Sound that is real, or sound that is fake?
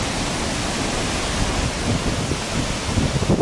real